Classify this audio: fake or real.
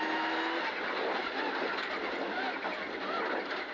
real